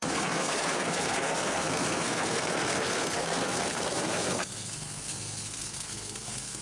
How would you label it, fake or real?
fake